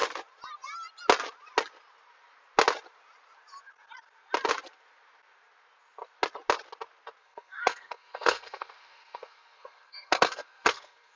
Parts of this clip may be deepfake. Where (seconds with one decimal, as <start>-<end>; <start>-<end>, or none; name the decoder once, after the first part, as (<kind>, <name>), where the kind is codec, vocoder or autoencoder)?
7.2-11.2 (codec, SNAC)